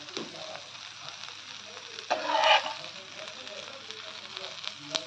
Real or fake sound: real